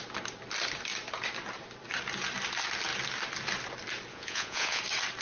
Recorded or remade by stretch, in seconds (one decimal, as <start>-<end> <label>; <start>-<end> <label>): 0.0-4.1 recorded; 4.1-4.8 remade; 4.8-5.2 recorded